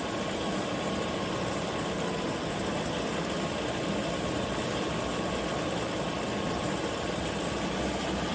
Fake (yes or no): no